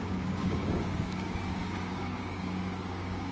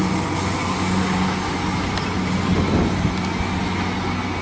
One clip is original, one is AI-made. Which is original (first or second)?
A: second